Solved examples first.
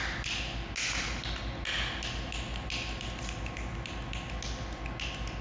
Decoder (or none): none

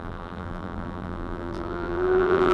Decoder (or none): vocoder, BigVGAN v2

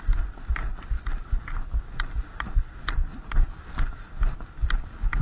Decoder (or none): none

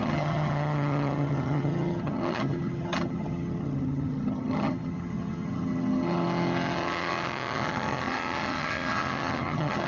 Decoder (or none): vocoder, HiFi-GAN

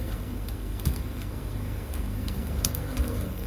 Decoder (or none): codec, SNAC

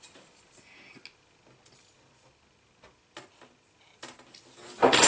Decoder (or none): none